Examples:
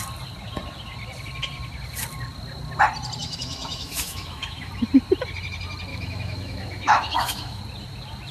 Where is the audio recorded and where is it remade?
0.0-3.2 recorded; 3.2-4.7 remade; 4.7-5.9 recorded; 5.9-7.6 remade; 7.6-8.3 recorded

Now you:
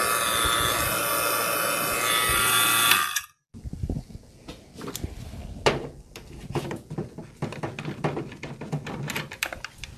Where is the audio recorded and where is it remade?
0.0-10.0 recorded

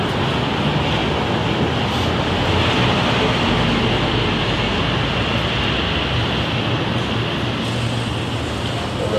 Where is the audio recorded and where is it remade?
0.0-9.2 recorded